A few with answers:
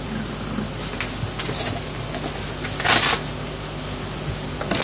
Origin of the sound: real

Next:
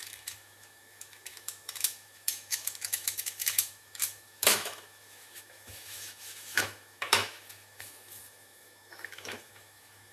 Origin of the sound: fake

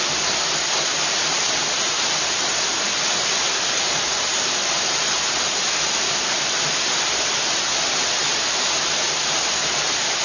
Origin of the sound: real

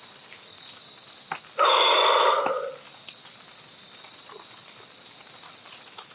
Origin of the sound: real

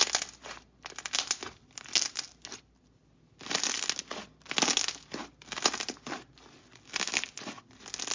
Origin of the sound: real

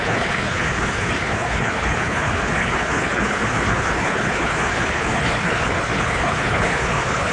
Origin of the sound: fake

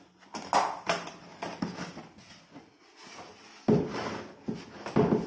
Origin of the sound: real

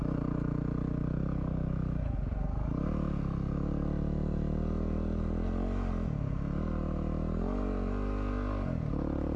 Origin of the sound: real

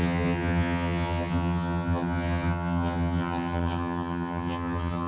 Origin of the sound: fake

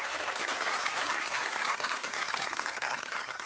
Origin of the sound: fake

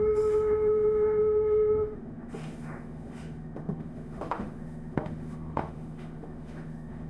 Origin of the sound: fake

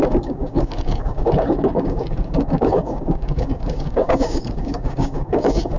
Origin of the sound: fake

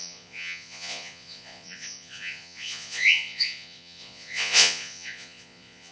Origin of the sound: fake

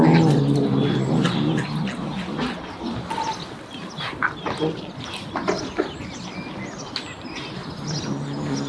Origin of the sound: real